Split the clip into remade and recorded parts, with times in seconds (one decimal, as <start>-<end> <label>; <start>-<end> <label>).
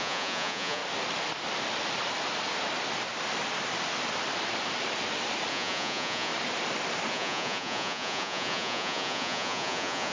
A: 0.0-0.8 remade; 0.8-5.5 recorded; 5.5-6.3 remade; 6.3-7.1 recorded; 7.1-10.1 remade